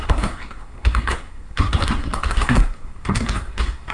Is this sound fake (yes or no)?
yes